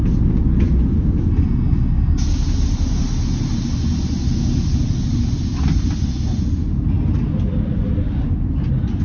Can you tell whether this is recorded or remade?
recorded